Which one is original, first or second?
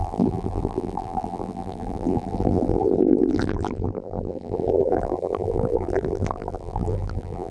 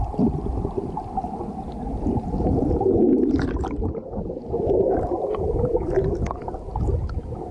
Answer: second